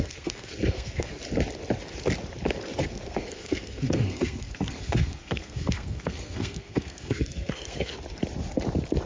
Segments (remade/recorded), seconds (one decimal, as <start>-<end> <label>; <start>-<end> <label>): 0.0-1.1 remade; 1.1-2.8 recorded; 2.8-7.9 remade; 7.9-9.1 recorded